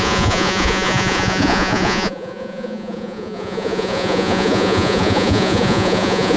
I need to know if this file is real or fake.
fake